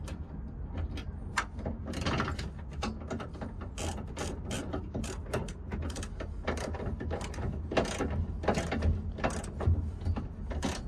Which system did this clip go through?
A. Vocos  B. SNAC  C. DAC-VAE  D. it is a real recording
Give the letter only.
D